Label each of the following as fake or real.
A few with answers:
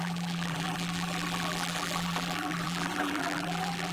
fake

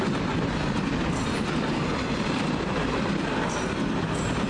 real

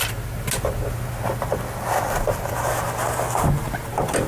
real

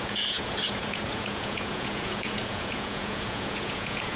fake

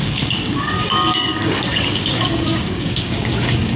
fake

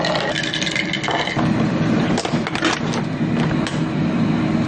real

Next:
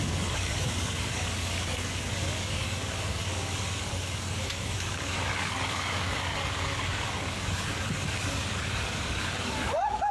fake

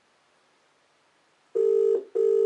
real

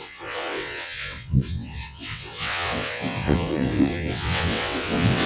fake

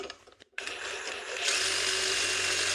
real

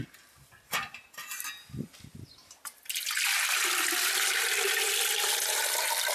real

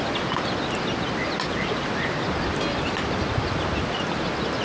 real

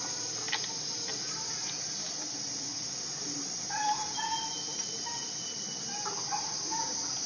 real